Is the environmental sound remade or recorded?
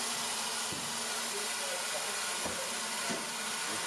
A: recorded